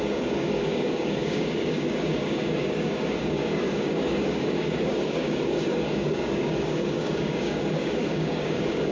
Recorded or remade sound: remade